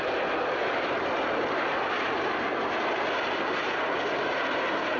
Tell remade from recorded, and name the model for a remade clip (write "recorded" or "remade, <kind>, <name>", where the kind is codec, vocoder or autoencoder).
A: recorded